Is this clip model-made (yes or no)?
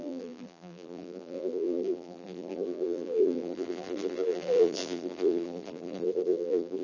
yes